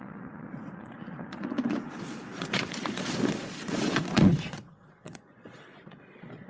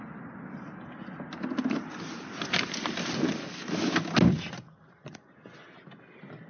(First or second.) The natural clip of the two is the second